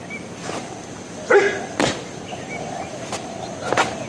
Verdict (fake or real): real